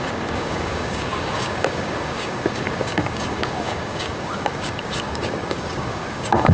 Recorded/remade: remade